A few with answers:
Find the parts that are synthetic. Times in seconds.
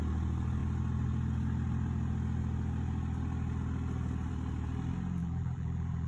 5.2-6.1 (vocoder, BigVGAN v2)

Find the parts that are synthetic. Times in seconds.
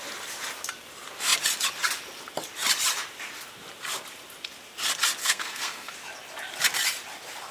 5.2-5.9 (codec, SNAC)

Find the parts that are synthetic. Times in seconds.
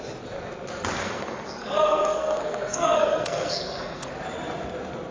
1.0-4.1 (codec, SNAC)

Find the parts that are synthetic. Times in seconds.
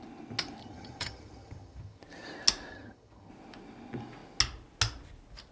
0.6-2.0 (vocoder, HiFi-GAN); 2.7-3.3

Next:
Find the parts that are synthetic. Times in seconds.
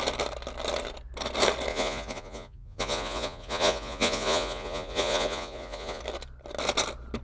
1.7-6.0 (vocoder, Vocos)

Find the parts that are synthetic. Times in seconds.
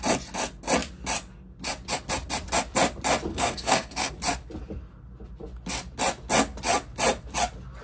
3.3-4.1 (codec, SNAC)